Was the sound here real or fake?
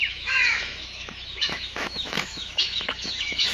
fake